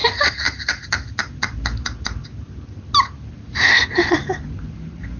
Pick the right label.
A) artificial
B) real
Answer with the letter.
B